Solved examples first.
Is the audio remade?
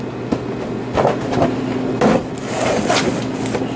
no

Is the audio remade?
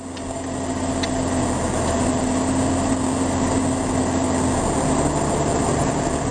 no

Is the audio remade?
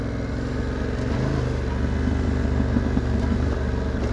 no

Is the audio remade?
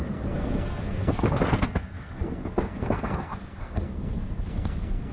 yes